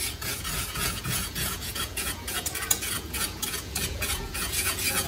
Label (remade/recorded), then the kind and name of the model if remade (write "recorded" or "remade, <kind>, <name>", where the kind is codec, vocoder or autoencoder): remade, vocoder, Vocos